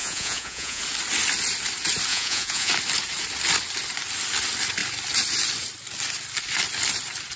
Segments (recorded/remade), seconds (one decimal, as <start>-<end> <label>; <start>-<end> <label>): 0.0-0.8 remade; 0.8-2.1 recorded; 2.1-2.7 remade; 2.7-7.4 recorded